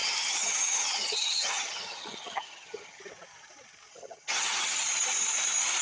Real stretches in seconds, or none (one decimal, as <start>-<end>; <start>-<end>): 3.0-3.9; 4.8-5.8